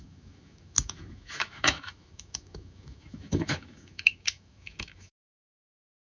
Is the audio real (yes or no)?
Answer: no